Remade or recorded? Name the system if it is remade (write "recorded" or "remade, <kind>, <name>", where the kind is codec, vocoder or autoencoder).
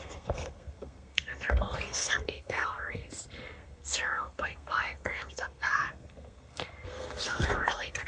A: remade, codec, SNAC